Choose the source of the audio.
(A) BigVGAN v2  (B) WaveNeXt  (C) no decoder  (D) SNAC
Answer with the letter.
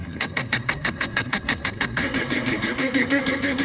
D